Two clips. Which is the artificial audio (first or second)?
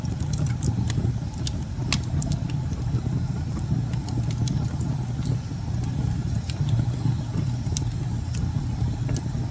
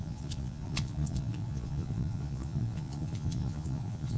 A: second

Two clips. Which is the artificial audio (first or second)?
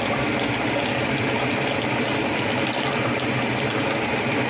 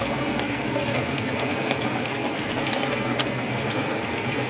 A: second